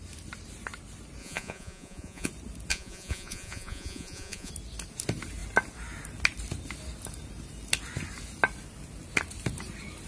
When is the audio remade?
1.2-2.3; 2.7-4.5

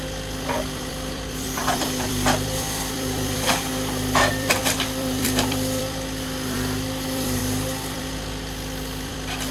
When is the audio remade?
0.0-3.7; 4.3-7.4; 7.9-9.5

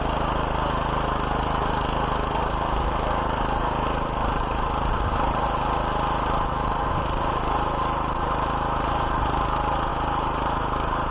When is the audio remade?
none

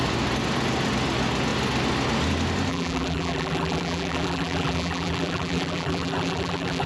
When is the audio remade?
2.7-6.9